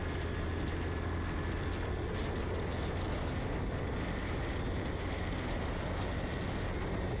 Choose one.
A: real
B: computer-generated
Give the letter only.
A